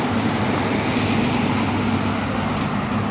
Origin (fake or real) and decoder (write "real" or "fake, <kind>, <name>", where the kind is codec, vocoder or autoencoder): real